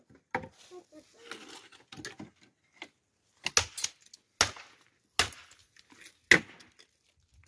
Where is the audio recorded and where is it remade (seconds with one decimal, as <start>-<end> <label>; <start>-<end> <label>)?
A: 0.0-7.5 recorded